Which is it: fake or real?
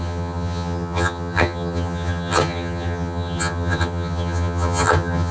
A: fake